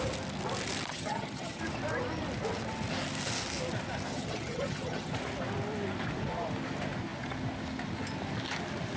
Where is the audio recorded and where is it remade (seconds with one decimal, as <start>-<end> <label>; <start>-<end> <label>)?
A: 0.0-0.9 recorded; 0.9-1.6 remade; 1.6-4.1 recorded; 4.1-5.1 remade; 5.1-9.0 recorded